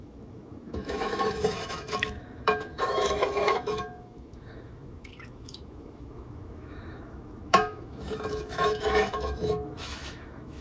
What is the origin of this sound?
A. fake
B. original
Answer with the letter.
A